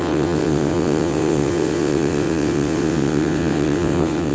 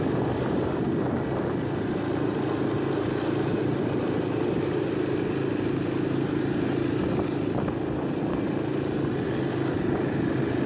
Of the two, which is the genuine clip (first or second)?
second